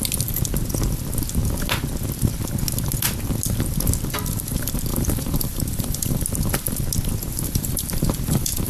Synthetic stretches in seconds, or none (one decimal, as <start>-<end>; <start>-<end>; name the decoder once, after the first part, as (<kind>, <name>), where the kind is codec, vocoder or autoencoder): 4.9-6.2 (vocoder, BigVGAN v2); 7.3-8.7